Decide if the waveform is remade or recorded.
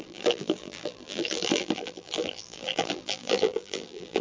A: remade